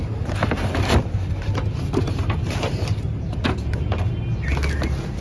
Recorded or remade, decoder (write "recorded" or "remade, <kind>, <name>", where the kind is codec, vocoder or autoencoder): recorded